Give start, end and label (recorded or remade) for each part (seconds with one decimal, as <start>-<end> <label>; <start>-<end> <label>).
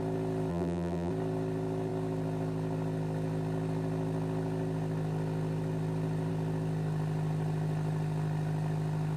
0.0-0.5 recorded; 0.5-1.1 remade; 1.1-9.2 recorded